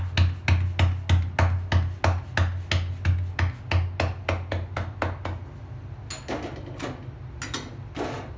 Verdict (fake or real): real